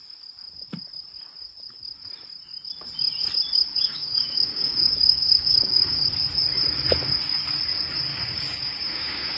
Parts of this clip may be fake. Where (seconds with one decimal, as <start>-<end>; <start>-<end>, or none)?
3.7-6.1; 8.1-9.4